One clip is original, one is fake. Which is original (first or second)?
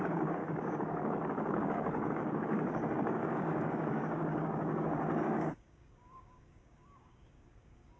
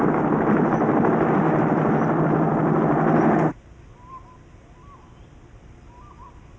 second